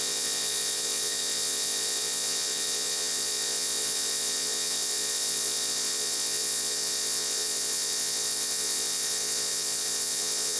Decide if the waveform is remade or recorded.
remade